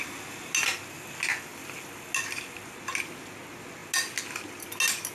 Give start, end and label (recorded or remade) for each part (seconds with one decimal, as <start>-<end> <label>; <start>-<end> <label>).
0.0-5.1 recorded